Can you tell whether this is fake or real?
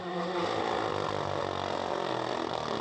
real